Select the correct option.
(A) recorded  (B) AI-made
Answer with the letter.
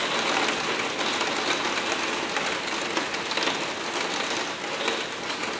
A